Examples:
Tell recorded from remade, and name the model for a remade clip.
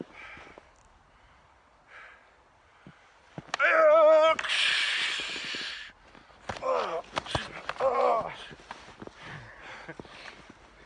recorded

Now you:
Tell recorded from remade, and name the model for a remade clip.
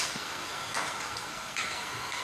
remade, codec, SNAC